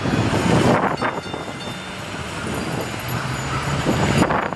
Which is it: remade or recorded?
recorded